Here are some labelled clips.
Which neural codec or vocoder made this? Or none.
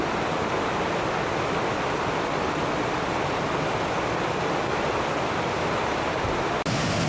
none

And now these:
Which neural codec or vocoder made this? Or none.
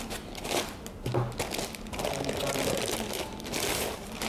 none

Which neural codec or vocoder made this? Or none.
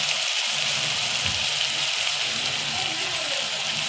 none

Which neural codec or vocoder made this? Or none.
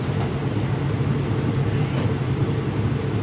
none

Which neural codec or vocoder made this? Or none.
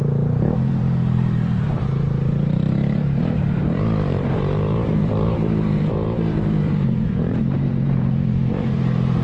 vocoder, BigVGAN v2